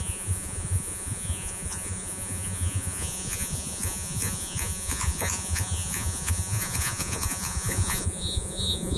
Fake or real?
fake